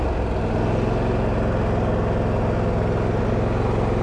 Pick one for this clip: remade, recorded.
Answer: recorded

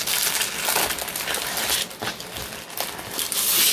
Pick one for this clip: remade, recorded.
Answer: recorded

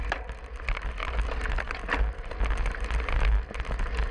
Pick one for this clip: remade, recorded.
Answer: recorded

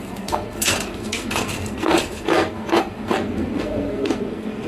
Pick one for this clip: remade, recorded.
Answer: remade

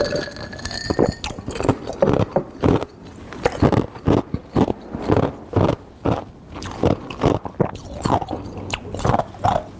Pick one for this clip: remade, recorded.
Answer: recorded